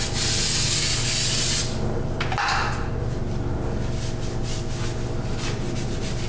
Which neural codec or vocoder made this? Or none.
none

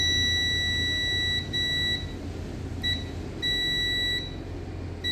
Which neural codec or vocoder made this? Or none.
none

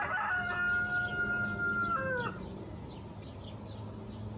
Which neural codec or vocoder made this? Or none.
none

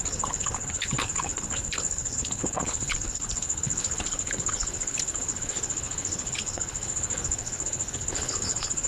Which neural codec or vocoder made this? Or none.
codec, HILCodec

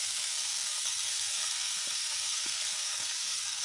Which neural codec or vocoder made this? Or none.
codec, SNAC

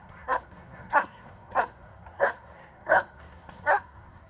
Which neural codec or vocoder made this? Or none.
codec, SNAC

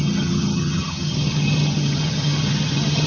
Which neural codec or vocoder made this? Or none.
vocoder, HiFi-GAN